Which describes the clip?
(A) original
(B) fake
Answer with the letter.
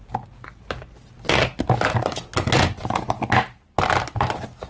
A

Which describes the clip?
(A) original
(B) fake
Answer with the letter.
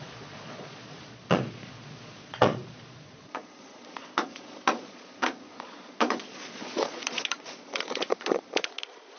B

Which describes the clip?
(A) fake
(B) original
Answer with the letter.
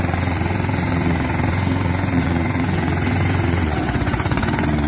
A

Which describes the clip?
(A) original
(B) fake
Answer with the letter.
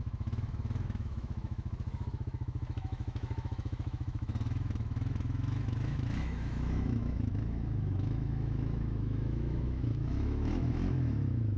B